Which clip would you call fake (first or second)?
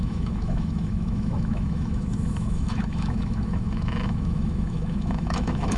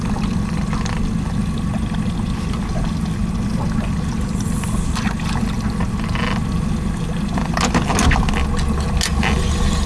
first